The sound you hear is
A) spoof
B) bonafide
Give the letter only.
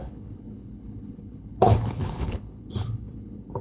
A